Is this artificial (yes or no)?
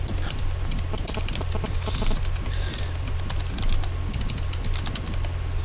no